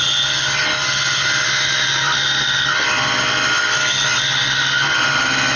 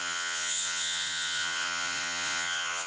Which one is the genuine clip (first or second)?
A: first